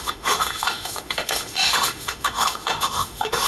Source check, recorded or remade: remade